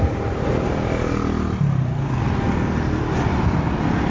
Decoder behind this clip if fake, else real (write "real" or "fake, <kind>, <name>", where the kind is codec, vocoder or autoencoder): real